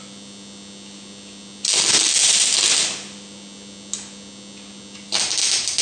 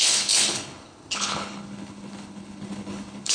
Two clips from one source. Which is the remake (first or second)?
second